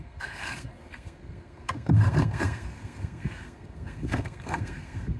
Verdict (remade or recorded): remade